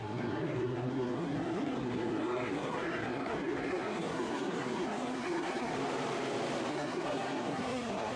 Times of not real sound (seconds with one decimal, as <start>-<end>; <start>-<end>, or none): 0.0-5.7; 6.7-8.2